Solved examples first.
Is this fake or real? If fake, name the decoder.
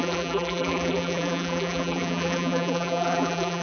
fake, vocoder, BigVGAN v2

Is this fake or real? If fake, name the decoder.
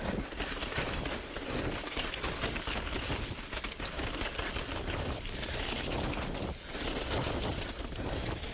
real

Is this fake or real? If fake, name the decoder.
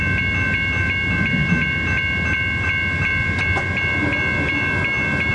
real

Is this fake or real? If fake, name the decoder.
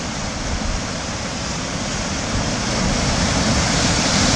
real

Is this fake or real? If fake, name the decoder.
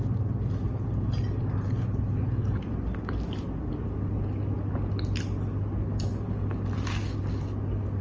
real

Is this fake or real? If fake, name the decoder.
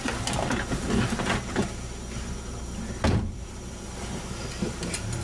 real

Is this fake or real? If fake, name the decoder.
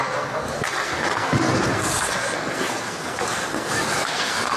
fake, codec, SNAC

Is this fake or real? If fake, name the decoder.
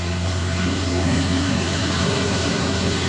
fake, codec, SNAC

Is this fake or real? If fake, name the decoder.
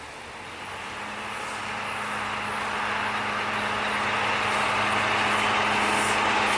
real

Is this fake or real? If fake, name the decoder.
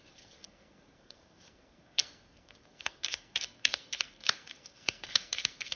fake, codec, SNAC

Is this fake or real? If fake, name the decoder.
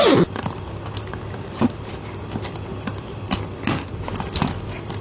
real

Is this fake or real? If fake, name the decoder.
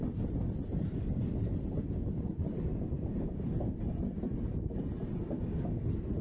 real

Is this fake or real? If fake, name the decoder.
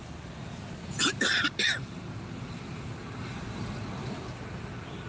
real